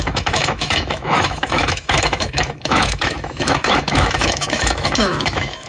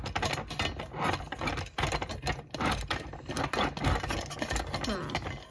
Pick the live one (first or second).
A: second